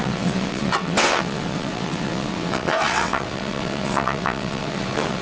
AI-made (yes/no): yes